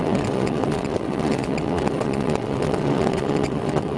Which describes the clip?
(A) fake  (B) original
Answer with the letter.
A